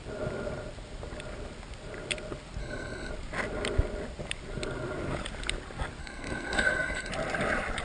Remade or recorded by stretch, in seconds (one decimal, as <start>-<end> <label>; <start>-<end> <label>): 0.0-2.6 recorded; 2.6-3.1 remade; 3.1-6.0 recorded; 6.0-7.1 remade; 7.1-7.8 recorded